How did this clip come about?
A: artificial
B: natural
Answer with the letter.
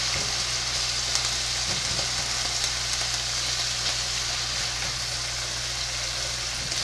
B